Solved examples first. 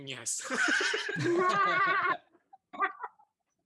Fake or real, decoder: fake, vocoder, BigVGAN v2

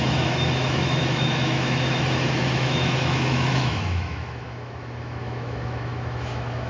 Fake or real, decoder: fake, autoencoder, DAC-VAE